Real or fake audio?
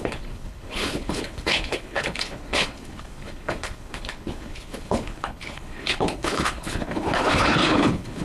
fake